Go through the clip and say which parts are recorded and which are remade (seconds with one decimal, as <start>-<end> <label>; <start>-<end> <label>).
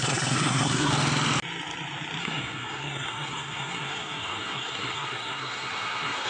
0.0-0.9 remade; 0.9-2.2 recorded; 2.2-6.3 remade